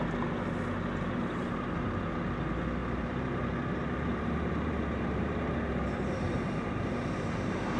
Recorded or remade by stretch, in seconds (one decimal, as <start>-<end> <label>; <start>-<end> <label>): 0.0-1.2 recorded; 1.2-1.9 remade; 1.9-2.8 recorded; 2.8-7.8 remade